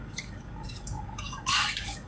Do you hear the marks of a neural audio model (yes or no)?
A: yes